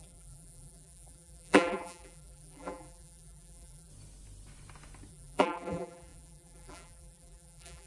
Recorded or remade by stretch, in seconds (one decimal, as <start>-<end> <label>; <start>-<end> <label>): 0.0-3.9 remade; 3.9-5.1 recorded; 5.1-7.9 remade